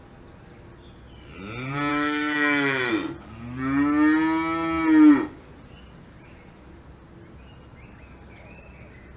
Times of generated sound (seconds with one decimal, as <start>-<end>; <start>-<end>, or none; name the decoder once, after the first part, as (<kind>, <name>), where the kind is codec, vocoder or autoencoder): 1.9-2.9 (autoencoder, DAC-VAE)

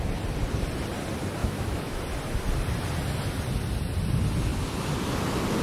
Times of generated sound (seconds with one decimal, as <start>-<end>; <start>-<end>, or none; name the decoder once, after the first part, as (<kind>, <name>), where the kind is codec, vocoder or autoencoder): 1.4-2.0 (autoencoder, DAC-VAE)

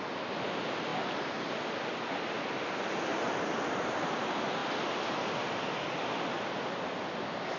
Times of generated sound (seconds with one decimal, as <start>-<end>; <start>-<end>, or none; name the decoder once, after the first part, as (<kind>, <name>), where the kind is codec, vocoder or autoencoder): none

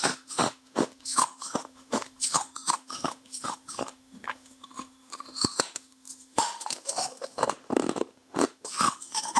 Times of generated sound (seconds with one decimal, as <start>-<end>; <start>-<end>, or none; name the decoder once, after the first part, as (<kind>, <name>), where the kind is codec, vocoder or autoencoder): 0.0-9.4 (autoencoder, DAC-VAE)